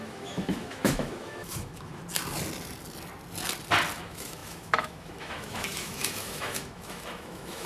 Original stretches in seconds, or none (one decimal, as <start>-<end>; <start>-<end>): 2.0-4.0